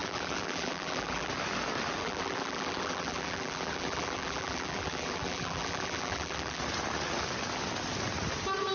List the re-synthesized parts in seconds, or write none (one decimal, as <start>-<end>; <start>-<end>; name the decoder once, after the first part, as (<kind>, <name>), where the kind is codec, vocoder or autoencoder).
0.0-1.3 (vocoder, BigVGAN v2); 2.0-6.6